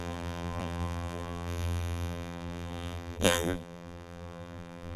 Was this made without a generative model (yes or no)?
no